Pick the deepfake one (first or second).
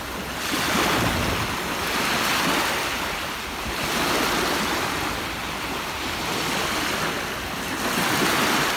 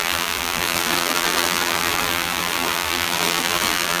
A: second